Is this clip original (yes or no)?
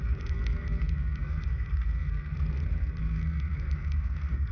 no